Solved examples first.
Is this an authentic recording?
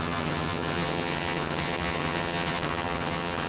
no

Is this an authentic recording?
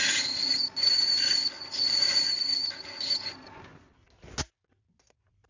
yes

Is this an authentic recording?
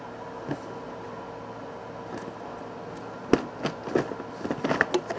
yes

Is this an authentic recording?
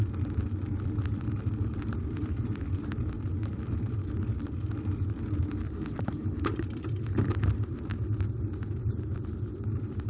yes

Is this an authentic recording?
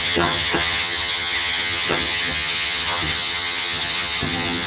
no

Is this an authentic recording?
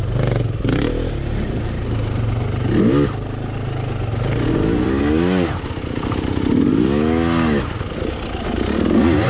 yes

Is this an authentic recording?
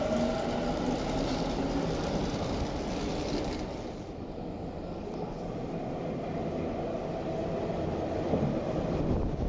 yes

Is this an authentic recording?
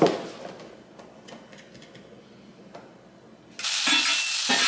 yes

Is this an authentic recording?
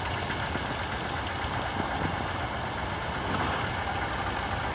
yes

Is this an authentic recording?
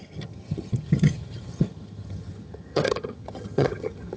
no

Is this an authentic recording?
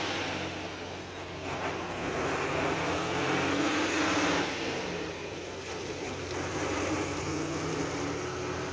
yes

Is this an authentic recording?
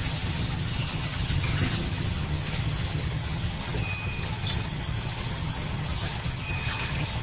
no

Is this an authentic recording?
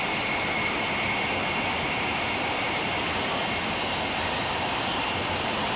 yes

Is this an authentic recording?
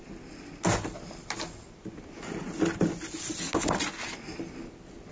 yes